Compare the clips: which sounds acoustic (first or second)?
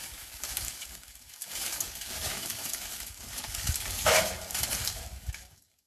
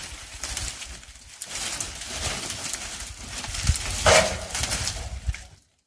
second